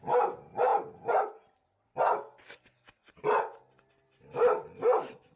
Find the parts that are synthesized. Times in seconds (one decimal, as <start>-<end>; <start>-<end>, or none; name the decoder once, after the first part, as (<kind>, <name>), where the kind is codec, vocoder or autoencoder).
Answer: none